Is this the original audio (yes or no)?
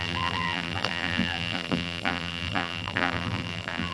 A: no